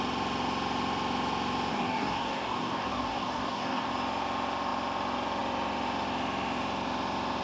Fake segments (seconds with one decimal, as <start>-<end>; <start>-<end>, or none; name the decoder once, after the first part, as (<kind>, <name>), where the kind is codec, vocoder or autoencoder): 1.7-3.9 (codec, DAC)